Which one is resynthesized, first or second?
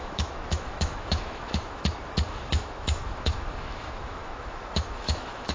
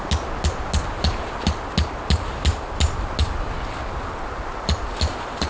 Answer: first